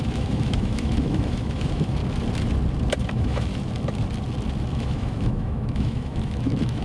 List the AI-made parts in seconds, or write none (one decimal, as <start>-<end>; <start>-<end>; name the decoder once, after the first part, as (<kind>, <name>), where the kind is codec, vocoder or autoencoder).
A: 0.0-2.0 (autoencoder, DAC-VAE); 3.1-3.5; 4.7-6.8